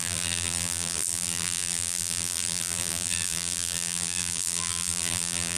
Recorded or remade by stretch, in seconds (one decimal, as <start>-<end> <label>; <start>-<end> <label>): 0.0-5.6 remade